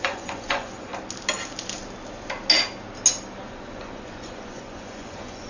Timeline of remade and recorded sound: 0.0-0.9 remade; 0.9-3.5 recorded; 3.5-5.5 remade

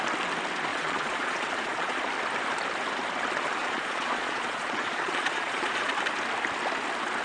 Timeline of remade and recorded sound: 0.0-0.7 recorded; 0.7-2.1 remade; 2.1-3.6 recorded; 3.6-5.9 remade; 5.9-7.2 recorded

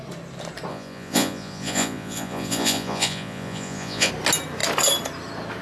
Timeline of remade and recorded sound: 0.0-0.7 recorded; 0.7-4.1 remade; 4.1-5.6 recorded

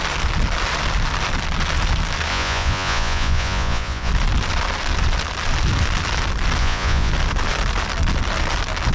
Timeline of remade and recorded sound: 0.0-2.3 recorded; 2.3-4.1 remade; 4.1-6.6 recorded; 6.6-7.1 remade; 7.1-8.9 recorded

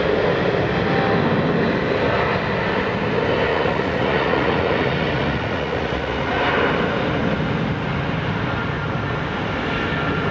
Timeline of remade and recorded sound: 0.0-3.5 recorded; 3.5-6.4 remade; 6.4-10.3 recorded